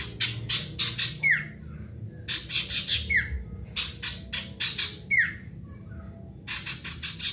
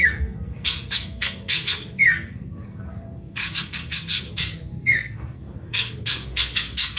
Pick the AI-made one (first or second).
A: second